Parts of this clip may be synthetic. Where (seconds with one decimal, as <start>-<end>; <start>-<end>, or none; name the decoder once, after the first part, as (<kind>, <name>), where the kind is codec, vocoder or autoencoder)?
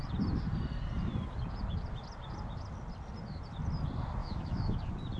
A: 4.2-4.8 (autoencoder, DAC-VAE)